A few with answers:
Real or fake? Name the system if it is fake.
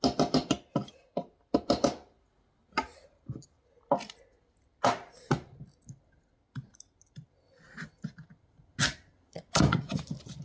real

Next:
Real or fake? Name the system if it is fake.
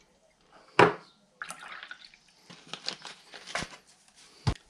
real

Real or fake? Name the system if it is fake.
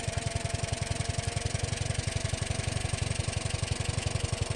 real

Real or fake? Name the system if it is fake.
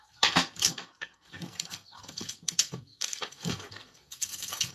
fake, codec, SNAC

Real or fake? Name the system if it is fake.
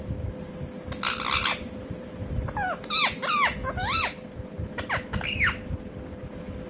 real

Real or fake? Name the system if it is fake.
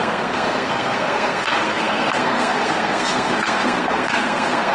fake, codec, SNAC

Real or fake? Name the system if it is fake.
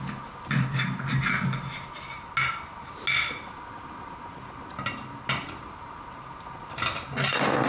real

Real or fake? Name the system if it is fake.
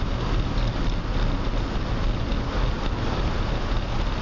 real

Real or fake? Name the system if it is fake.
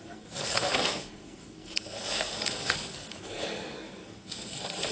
fake, codec, SNAC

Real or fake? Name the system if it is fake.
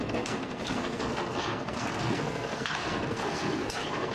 fake, codec, SNAC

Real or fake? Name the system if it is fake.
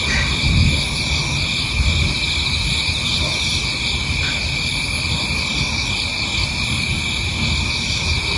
real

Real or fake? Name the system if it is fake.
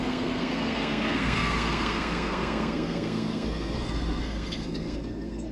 fake, codec, SNAC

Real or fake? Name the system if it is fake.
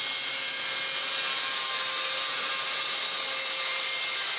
real